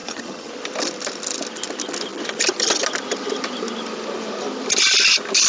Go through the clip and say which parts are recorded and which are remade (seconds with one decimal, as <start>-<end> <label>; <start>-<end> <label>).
0.0-0.5 remade; 0.5-5.5 recorded

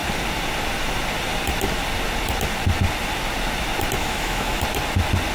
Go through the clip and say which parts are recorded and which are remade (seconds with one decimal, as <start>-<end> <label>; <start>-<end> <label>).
0.0-4.0 recorded; 4.0-4.6 remade; 4.6-5.3 recorded

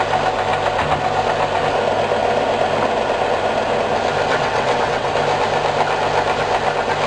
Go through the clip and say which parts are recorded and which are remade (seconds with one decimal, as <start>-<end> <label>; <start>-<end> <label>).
0.0-4.3 recorded; 4.3-5.1 remade; 5.1-7.1 recorded

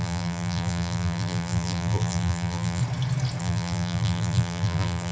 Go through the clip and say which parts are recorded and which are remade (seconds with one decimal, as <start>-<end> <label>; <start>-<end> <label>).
0.0-2.8 remade; 2.8-3.4 recorded; 3.4-5.1 remade

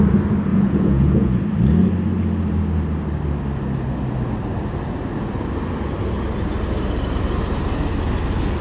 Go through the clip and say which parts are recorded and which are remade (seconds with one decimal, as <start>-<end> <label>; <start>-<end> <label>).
0.0-0.5 recorded; 0.5-1.4 remade; 1.4-8.6 recorded

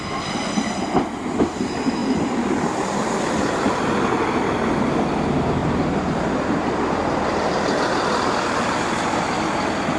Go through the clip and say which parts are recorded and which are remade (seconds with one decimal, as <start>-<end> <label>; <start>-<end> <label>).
0.0-2.0 recorded; 2.0-2.6 remade; 2.6-5.6 recorded; 5.6-10.0 remade

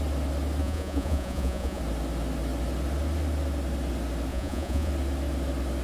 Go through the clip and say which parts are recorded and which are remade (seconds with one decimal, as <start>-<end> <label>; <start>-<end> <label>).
0.0-0.6 recorded; 0.6-1.8 remade; 1.8-4.3 recorded; 4.3-4.9 remade; 4.9-5.8 recorded